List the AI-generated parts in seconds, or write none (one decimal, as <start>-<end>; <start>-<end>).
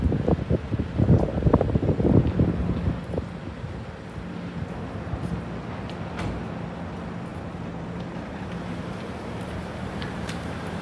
7.3-10.8